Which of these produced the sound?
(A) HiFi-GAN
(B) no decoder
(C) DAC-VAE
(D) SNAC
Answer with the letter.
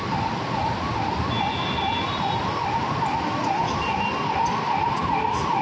B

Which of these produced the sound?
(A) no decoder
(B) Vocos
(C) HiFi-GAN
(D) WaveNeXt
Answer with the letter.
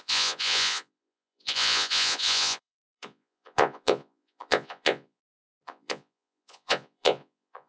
B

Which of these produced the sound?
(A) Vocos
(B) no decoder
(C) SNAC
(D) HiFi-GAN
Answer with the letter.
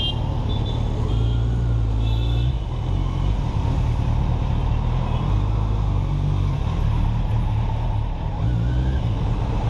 B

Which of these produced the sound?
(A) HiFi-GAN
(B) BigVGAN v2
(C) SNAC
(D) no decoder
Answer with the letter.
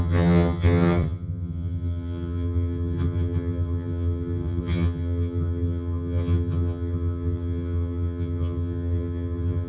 A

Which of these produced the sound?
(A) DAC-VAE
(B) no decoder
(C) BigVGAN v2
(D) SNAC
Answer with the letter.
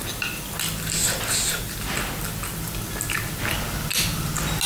B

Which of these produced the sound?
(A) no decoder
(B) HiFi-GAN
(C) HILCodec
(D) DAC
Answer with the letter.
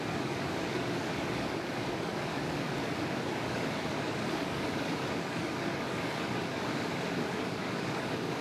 D